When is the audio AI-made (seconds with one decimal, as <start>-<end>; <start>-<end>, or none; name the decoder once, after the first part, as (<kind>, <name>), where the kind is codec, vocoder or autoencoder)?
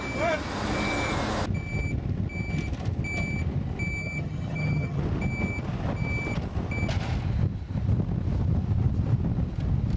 4.0-5.0 (vocoder, HiFi-GAN)